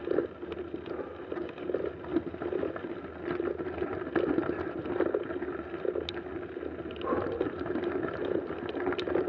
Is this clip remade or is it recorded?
recorded